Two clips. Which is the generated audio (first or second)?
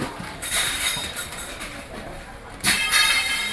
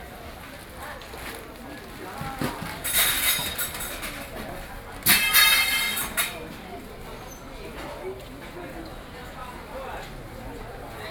first